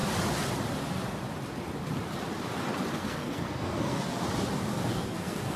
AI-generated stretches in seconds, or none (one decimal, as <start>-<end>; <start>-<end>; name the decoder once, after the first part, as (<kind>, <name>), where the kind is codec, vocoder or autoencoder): 2.9-4.2 (codec, SNAC); 4.7-5.6